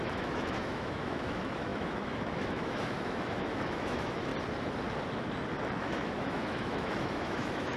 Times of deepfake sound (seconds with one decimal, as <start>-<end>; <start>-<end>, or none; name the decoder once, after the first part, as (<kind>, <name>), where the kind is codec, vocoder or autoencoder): 0.0-4.3 (autoencoder, DAC-VAE); 5.8-7.8